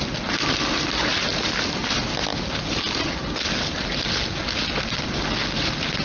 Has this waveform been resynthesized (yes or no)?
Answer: no